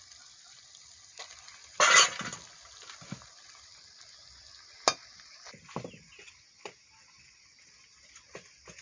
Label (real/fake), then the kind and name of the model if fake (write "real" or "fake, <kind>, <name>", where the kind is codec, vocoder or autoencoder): real